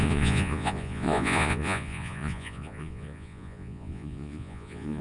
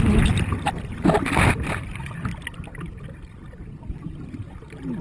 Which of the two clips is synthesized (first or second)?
first